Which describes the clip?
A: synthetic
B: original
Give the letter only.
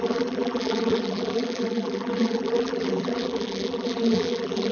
A